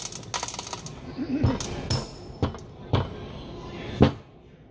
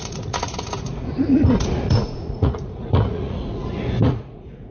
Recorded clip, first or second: first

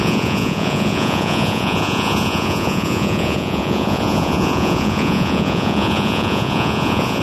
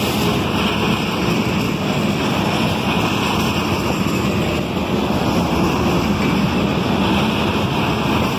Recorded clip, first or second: second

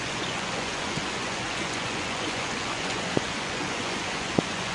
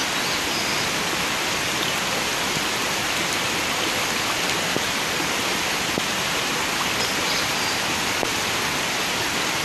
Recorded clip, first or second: second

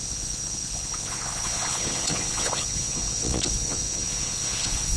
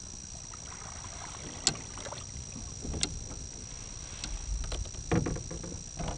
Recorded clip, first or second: second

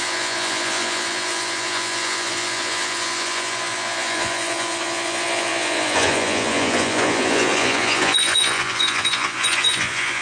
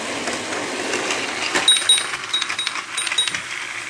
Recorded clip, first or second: second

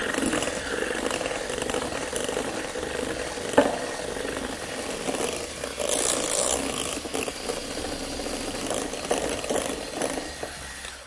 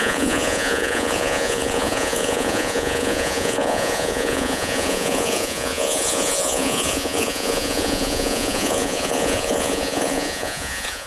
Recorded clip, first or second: first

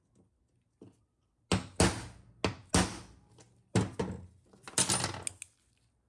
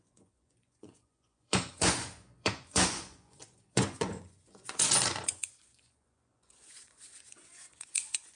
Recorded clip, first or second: first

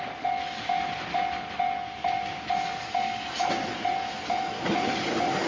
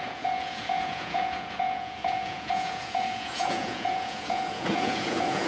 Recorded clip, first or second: first